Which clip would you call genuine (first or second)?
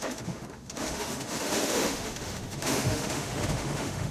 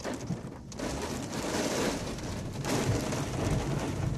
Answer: second